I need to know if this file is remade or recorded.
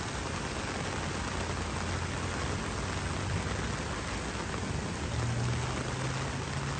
recorded